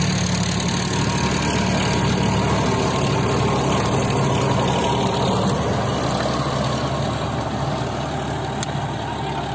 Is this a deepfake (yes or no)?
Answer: no